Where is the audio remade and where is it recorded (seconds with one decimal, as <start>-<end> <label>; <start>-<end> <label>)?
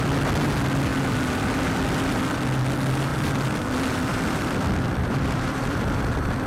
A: 0.0-4.1 recorded; 4.1-6.1 remade; 6.1-6.5 recorded